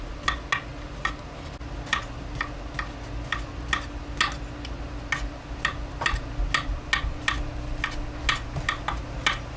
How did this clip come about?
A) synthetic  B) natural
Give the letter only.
B